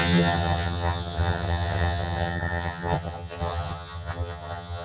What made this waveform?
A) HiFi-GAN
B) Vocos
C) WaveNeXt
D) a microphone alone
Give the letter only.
A